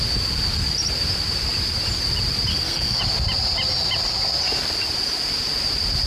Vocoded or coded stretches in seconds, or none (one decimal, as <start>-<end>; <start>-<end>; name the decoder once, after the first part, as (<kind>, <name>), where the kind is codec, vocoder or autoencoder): 2.5-3.0 (codec, SNAC)